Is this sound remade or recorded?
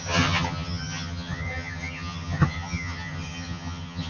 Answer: remade